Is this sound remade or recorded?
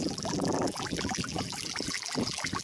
remade